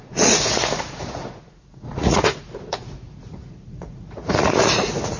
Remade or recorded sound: remade